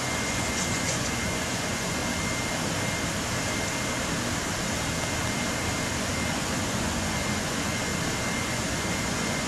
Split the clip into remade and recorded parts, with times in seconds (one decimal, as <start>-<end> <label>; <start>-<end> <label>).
0.0-2.0 remade; 2.0-6.0 recorded; 6.0-7.9 remade; 7.9-8.4 recorded; 8.4-9.5 remade